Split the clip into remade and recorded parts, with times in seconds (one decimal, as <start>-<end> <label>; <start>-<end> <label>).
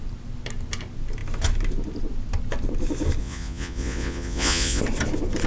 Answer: 0.0-3.2 recorded; 3.2-4.8 remade; 4.8-5.5 recorded